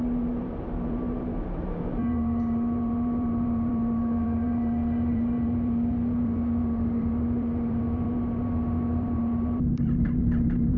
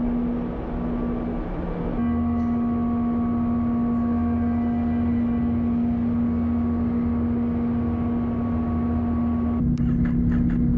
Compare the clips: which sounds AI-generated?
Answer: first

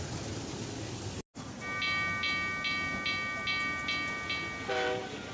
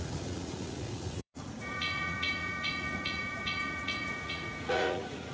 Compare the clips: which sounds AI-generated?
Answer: second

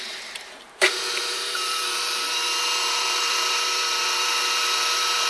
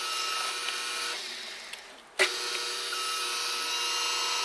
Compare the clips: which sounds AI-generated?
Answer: first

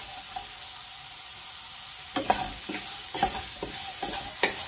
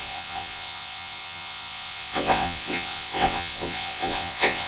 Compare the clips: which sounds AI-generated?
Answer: second